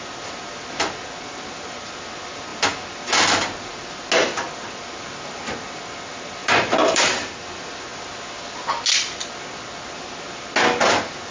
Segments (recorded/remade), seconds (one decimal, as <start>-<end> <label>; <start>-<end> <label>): 0.0-6.4 recorded; 6.4-7.5 remade; 7.5-11.3 recorded